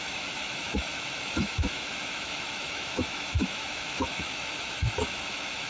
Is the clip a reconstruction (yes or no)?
yes